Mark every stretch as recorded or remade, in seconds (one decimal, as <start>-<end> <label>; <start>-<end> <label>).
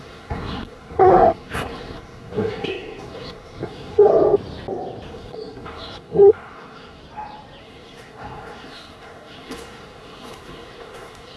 0.0-4.1 remade; 4.1-5.1 recorded; 5.1-7.0 remade; 7.0-7.6 recorded; 7.6-11.4 remade